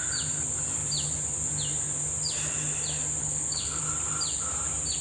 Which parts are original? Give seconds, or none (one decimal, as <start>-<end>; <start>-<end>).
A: 0.0-3.2; 3.8-5.0